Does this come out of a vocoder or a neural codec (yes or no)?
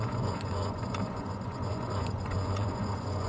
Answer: yes